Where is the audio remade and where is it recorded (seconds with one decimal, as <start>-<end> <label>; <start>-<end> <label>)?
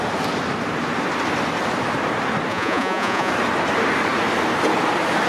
0.0-2.5 recorded; 2.5-3.3 remade; 3.3-5.3 recorded